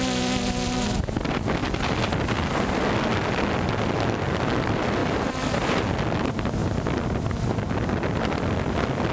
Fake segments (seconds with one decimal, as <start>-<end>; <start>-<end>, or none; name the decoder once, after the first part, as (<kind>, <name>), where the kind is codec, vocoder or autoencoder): none

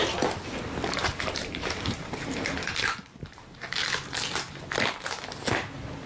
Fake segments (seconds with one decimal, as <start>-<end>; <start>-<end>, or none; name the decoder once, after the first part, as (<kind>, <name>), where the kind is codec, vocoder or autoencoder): 1.0-4.6 (vocoder, BigVGAN v2)

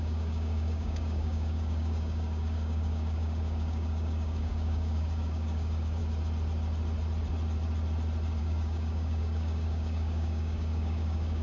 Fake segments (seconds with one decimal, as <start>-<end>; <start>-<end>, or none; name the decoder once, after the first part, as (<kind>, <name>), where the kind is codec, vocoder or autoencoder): 0.0-6.0 (codec, DAC); 8.4-11.4

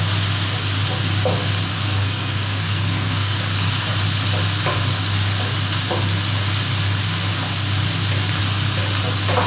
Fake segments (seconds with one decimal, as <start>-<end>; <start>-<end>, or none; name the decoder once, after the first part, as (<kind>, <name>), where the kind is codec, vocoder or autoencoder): 1.7-3.4 (codec, SNAC)

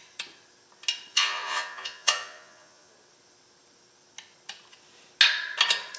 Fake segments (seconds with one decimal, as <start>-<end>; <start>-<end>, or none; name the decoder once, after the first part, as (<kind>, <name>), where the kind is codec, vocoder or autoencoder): 1.1-2.9 (vocoder, Vocos)

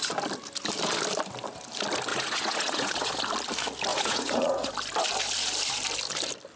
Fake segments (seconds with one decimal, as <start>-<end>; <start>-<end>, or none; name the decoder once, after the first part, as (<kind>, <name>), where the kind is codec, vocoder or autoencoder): 2.1-3.2 (vocoder, Vocos); 3.9-4.7

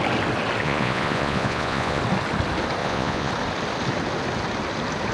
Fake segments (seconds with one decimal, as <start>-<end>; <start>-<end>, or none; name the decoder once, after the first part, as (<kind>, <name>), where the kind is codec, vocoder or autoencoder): 0.6-2.0 (vocoder, Vocos); 2.8-3.3